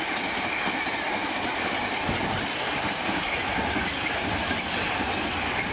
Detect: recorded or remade recorded